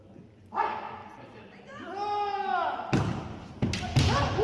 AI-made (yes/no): no